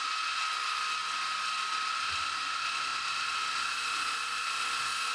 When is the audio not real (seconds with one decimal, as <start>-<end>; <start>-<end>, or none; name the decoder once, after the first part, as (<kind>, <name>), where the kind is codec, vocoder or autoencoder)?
none